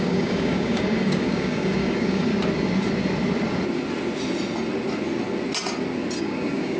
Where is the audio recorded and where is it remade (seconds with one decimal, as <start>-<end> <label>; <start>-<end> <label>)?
0.0-2.3 remade; 2.3-6.2 recorded; 6.2-6.8 remade